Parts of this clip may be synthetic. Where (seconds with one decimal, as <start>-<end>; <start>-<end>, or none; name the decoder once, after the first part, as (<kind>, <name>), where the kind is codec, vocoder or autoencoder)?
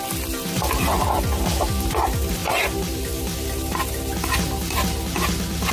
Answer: none